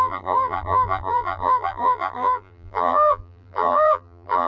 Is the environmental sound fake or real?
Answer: fake